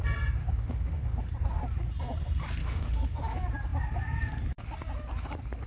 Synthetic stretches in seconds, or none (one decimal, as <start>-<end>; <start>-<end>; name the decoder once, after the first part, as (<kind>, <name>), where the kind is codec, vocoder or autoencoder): 0.4-1.2 (autoencoder, DAC-VAE); 2.6-3.2